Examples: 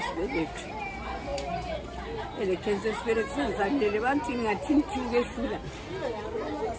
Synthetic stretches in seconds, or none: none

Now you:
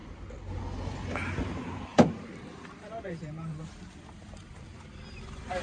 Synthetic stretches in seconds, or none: 1.9-4.5

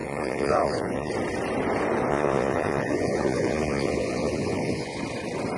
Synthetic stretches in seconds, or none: 0.0-1.1; 2.1-5.0

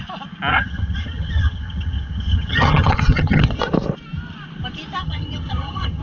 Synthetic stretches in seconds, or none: 0.5-3.6; 5.0-6.0